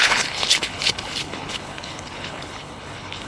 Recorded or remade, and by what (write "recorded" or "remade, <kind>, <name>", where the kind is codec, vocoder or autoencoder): remade, codec, HILCodec